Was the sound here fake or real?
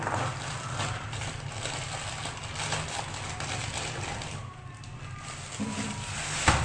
real